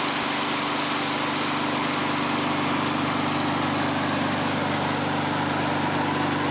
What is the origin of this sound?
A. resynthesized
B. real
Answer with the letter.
B